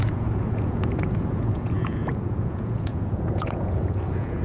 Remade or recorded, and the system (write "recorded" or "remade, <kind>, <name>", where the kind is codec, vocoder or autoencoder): remade, vocoder, Vocos